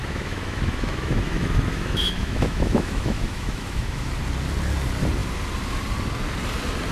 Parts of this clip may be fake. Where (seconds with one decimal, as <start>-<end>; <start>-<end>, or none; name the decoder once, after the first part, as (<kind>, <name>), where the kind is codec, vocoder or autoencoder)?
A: 0.0-4.1 (autoencoder, DAC-VAE)